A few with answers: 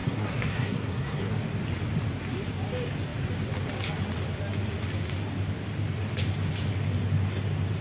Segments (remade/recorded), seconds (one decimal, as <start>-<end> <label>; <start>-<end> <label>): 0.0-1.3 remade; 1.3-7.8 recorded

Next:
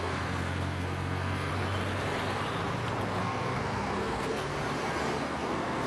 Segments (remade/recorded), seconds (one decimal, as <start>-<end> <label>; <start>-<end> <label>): 0.0-1.5 remade; 1.5-3.2 recorded; 3.2-4.5 remade; 4.5-5.2 recorded; 5.2-5.9 remade

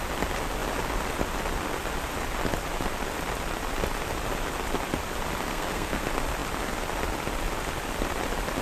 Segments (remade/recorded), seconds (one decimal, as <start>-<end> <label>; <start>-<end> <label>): 0.0-5.5 recorded; 5.5-6.0 remade; 6.0-8.6 recorded